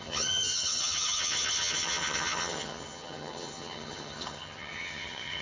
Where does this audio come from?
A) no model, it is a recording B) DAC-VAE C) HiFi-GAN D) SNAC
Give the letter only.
C